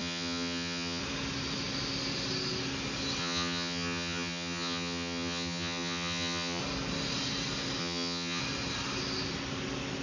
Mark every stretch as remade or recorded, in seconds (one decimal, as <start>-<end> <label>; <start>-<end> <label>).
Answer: 0.0-1.0 remade; 1.0-3.2 recorded; 3.2-6.6 remade; 6.6-7.8 recorded; 7.8-8.4 remade; 8.4-10.0 recorded